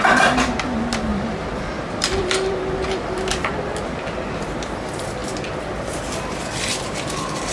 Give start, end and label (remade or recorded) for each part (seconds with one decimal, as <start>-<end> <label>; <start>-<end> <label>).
0.0-1.1 recorded; 1.1-3.6 remade; 3.6-7.5 recorded